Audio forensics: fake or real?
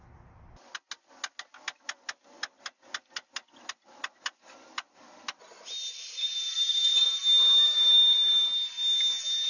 real